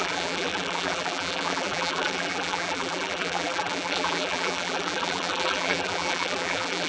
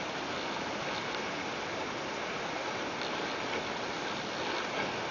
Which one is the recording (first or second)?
second